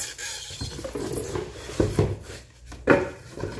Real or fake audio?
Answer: real